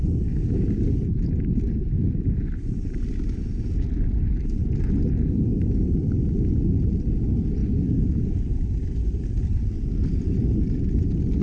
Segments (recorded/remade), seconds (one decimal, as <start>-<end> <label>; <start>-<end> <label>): 0.0-11.4 recorded